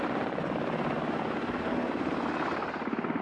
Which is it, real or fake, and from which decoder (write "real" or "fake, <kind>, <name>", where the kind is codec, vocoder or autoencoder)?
real